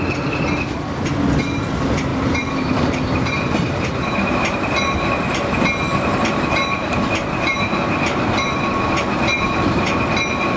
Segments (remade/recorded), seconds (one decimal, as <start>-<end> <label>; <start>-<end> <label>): 0.0-2.1 recorded; 2.1-4.4 remade; 4.4-5.9 recorded; 5.9-10.0 remade; 10.0-10.6 recorded